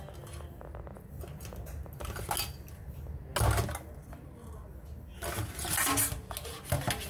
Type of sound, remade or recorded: recorded